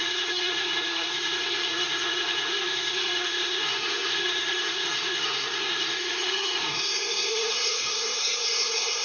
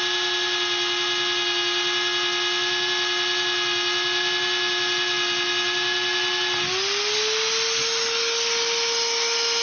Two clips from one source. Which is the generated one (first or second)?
first